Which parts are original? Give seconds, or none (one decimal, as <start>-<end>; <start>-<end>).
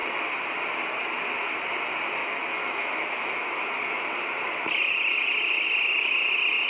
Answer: 0.0-2.2; 4.0-6.7